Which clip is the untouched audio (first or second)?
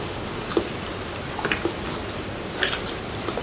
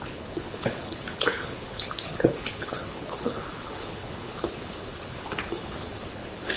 first